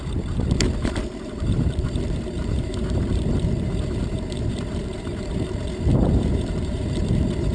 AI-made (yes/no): yes